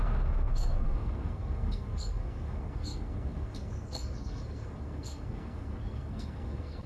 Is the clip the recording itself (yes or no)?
no